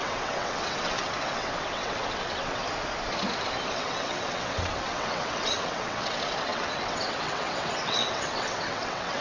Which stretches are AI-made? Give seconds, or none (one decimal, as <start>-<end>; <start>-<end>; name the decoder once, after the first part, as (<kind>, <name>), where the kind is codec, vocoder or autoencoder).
0.0-2.6 (vocoder, WaveNeXt); 3.7-9.2